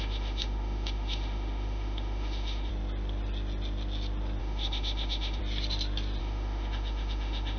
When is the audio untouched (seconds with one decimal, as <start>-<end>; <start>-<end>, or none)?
2.7-4.4; 5.4-6.2